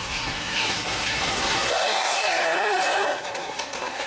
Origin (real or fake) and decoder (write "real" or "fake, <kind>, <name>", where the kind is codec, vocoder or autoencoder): fake, codec, SNAC